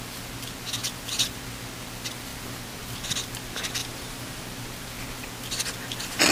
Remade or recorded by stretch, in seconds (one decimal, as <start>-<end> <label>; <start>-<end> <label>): 0.0-3.8 recorded; 3.8-4.4 remade; 4.4-6.3 recorded